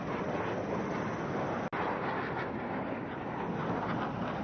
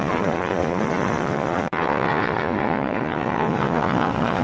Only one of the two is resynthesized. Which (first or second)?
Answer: second